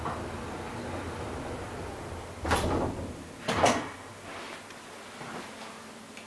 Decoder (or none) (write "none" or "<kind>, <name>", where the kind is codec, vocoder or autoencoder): none